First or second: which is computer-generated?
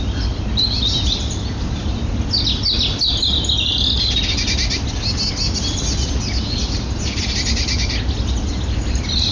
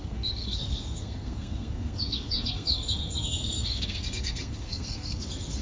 second